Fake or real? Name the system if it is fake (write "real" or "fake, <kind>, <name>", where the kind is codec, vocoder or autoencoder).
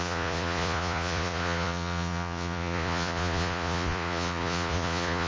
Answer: fake, vocoder, Vocos